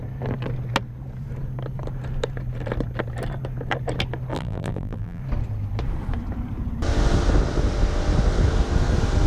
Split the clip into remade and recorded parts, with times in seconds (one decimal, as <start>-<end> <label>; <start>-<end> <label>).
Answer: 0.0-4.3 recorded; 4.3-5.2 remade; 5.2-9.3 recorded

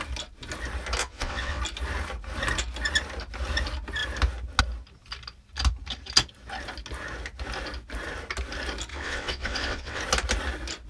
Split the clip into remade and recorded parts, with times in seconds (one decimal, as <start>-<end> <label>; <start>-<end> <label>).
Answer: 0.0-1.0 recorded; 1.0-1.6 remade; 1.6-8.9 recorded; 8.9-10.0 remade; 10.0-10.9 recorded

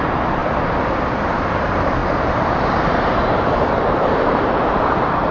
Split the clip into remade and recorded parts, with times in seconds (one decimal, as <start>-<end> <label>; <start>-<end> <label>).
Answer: 0.0-0.4 remade; 0.4-1.0 recorded; 1.0-5.3 remade

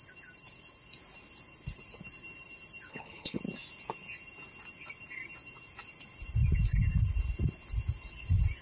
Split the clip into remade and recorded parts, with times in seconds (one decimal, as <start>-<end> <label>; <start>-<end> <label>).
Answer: 0.0-2.9 recorded; 2.9-3.4 remade; 3.4-8.6 recorded